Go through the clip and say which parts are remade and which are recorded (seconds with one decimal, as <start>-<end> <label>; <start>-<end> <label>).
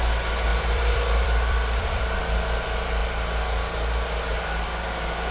0.0-0.5 recorded; 0.5-2.2 remade; 2.2-5.3 recorded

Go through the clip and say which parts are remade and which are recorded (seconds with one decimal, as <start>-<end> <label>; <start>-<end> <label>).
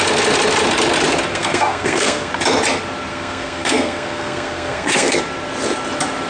0.0-1.3 recorded; 1.3-2.3 remade; 2.3-3.1 recorded; 3.1-5.2 remade; 5.2-6.3 recorded